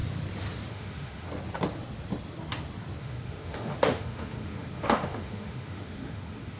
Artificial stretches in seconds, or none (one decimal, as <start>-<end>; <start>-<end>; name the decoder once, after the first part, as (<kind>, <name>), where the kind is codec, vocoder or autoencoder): 0.7-1.3 (autoencoder, DAC-VAE); 3.0-6.6